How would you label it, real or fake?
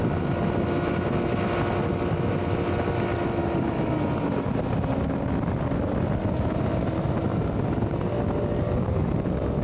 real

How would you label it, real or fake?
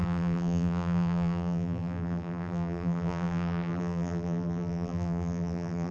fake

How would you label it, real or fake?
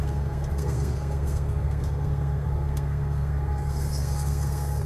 fake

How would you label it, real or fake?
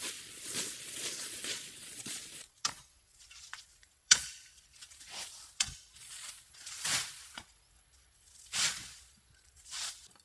fake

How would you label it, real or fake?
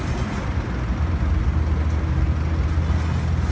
real